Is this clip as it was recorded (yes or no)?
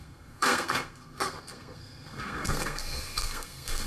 no